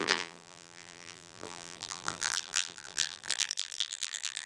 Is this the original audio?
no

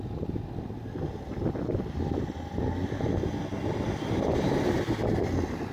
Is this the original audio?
yes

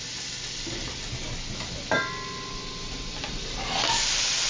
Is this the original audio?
yes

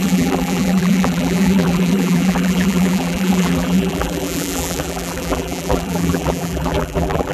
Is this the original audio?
no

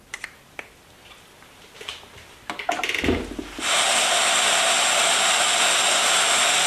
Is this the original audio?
yes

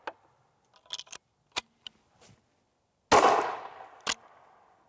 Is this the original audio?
yes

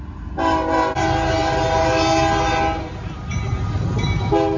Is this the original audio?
yes